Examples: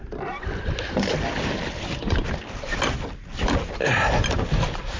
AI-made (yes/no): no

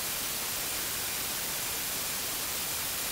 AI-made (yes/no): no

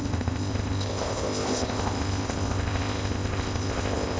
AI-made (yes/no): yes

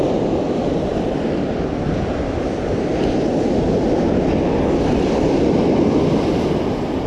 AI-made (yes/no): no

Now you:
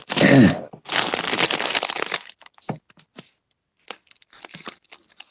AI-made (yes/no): no